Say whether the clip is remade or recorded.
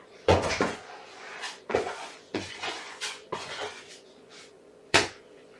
remade